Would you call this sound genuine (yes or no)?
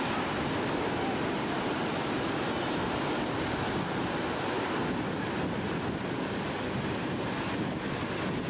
yes